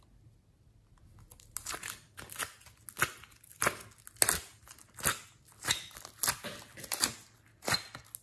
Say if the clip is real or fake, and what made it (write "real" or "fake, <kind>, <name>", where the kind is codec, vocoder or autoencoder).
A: real